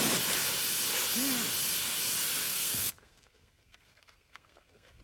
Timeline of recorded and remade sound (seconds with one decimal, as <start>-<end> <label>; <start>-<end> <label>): 0.0-2.4 recorded; 2.4-5.0 remade